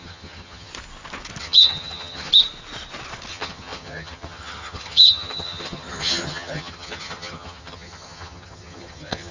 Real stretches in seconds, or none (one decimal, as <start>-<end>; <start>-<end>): 0.7-1.4; 2.3-3.3